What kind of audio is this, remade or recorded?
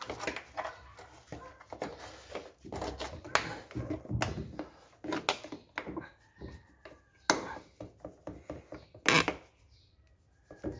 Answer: recorded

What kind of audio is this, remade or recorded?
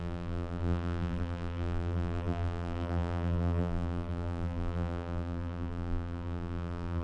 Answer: remade